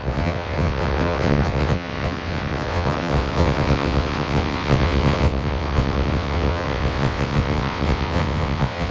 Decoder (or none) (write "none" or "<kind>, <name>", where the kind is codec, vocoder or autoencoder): vocoder, WaveNeXt